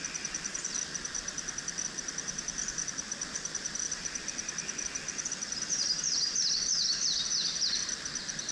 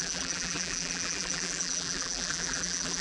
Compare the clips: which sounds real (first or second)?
first